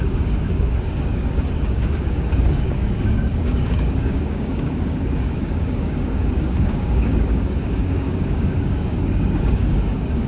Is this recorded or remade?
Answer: remade